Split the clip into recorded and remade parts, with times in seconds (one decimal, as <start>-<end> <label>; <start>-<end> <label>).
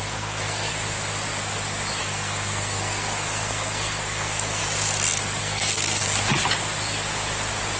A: 0.0-0.7 remade; 0.7-2.0 recorded; 2.0-4.6 remade; 4.6-5.4 recorded; 5.4-6.0 remade; 6.0-7.8 recorded